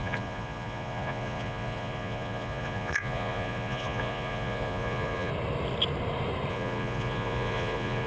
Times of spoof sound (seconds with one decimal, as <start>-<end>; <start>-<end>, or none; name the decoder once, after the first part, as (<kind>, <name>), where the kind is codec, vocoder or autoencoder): 0.0-5.3 (vocoder, Vocos); 6.5-8.1